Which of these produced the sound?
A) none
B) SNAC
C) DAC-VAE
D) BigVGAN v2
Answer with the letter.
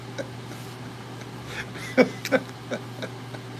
A